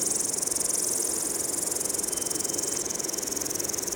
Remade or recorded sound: recorded